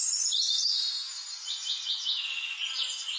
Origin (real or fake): real